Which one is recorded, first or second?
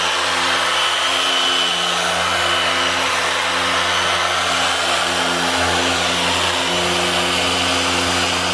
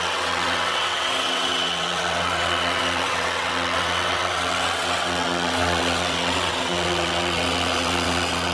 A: first